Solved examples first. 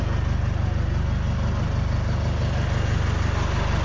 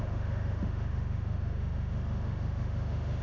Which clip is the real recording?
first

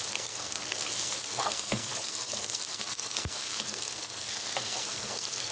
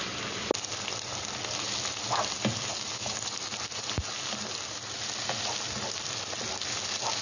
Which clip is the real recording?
second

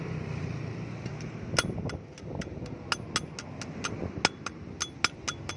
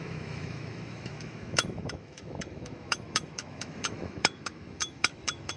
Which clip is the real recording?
first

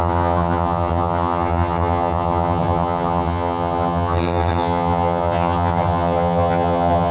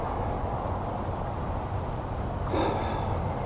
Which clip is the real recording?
second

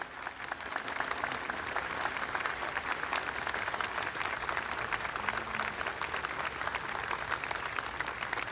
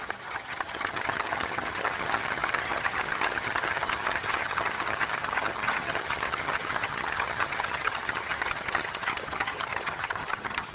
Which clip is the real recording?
first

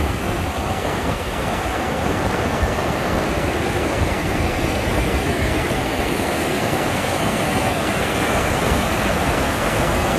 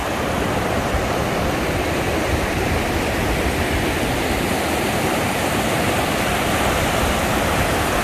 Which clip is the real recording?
second